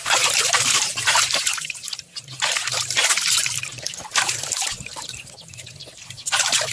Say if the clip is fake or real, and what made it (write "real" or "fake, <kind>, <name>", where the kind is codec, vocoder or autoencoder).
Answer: real